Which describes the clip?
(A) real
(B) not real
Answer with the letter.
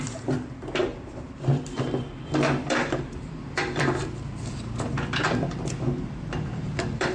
B